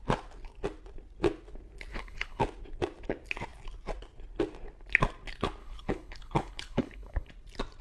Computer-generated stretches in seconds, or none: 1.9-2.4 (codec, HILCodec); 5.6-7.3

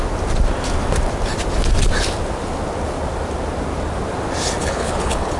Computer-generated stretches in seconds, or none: 4.6-5.4 (codec, HILCodec)